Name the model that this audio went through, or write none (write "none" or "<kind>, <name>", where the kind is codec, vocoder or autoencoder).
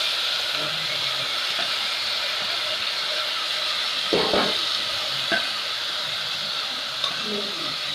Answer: none